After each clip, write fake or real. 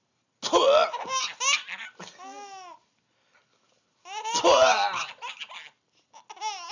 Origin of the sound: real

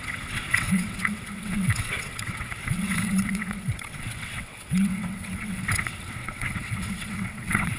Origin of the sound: fake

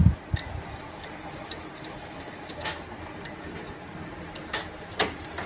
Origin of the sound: real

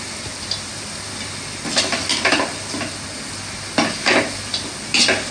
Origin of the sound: real